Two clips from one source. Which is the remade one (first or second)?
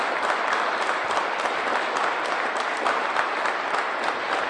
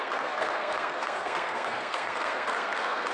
second